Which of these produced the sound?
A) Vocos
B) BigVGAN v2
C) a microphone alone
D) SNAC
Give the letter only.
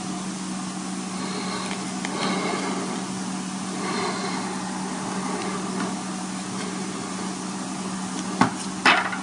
C